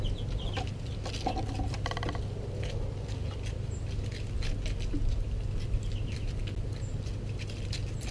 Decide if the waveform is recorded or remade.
recorded